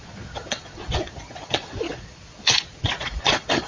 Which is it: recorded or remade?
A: remade